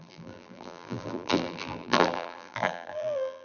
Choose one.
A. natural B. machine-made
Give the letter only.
B